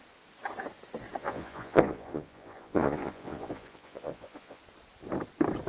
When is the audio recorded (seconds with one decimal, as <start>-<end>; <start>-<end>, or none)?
0.0-1.2; 4.6-5.7